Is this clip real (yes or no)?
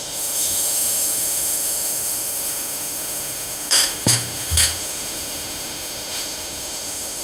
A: no